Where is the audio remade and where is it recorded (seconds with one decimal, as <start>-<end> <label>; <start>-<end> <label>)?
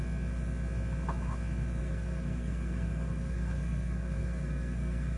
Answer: 0.0-1.8 recorded; 1.8-5.2 remade